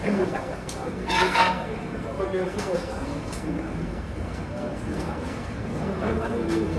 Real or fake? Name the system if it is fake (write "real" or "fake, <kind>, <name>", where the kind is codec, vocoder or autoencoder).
fake, codec, SNAC